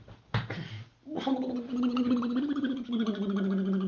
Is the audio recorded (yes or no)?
yes